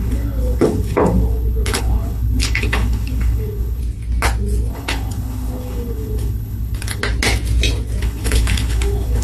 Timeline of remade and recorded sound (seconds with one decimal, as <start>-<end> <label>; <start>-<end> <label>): 0.0-3.8 remade; 3.8-4.7 recorded; 4.7-7.0 remade; 7.0-8.0 recorded; 8.0-9.2 remade